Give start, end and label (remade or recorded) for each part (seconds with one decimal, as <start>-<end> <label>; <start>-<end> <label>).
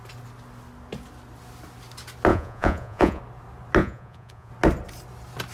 0.0-2.3 recorded; 2.3-3.2 remade; 3.2-3.8 recorded; 3.8-4.5 remade; 4.5-5.5 recorded